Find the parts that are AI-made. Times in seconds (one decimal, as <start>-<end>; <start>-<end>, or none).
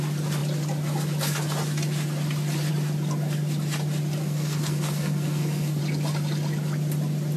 4.2-5.8